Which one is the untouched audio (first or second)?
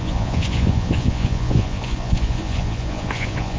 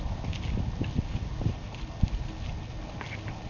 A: second